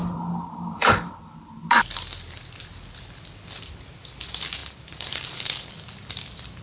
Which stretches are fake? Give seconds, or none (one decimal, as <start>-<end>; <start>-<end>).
0.0-1.5; 4.6-5.7